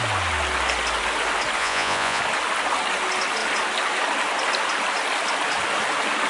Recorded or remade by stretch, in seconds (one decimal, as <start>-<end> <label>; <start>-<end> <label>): 0.0-1.6 recorded; 1.6-2.2 remade; 2.2-6.3 recorded